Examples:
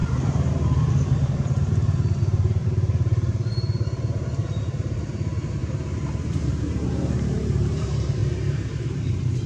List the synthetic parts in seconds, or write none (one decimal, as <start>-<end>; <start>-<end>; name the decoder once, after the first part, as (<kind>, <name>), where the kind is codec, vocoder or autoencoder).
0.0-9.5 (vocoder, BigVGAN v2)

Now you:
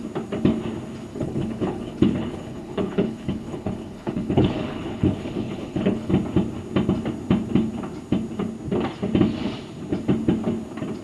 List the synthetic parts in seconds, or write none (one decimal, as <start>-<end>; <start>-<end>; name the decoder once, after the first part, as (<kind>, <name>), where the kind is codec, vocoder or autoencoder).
1.1-6.1 (codec, HILCodec)

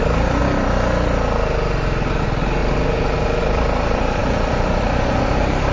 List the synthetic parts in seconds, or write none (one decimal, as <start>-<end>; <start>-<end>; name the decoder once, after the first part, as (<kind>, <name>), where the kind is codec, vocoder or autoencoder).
0.0-0.4 (vocoder, BigVGAN v2); 2.2-2.6; 3.4-4.2; 4.8-5.7

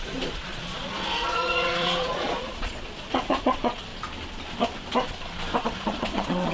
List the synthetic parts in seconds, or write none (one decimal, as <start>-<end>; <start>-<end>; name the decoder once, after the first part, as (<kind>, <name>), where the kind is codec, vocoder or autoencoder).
0.0-3.9 (vocoder, Vocos); 5.6-6.5

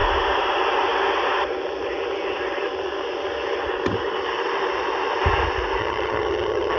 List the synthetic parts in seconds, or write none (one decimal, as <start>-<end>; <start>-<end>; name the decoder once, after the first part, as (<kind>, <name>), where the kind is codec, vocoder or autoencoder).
5.8-6.8 (vocoder, HiFi-GAN)

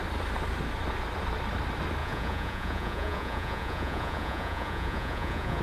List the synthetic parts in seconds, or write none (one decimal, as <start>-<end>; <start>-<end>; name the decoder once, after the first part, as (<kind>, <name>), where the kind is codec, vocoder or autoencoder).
2.0-5.6 (vocoder, Vocos)